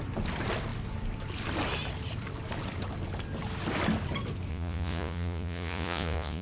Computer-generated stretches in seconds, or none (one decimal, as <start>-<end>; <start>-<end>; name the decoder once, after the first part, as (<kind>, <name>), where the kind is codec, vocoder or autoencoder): 4.5-6.4 (vocoder, Vocos)